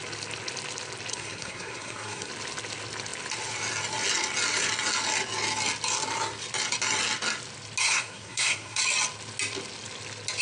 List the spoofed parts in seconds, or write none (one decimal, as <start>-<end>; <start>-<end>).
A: 1.1-2.3; 7.8-8.8